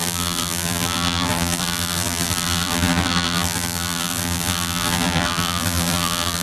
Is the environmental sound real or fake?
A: fake